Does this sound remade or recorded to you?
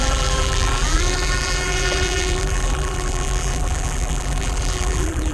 remade